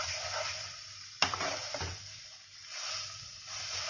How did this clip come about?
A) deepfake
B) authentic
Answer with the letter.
B